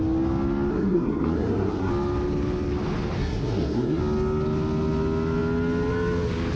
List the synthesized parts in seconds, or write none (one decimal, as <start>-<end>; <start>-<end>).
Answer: 0.7-1.9; 3.2-4.0